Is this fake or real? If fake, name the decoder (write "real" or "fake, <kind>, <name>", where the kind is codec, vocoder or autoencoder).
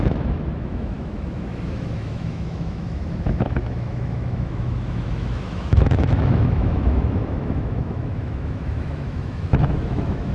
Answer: fake, autoencoder, DAC-VAE